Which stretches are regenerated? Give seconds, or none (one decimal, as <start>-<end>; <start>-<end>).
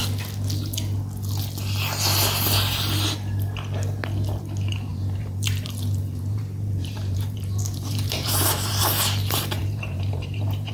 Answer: 4.9-8.7; 9.6-10.7